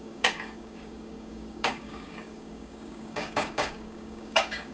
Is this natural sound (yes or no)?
no